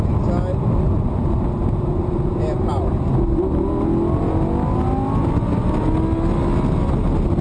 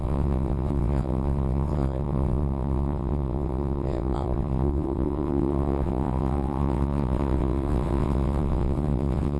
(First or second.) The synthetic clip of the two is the second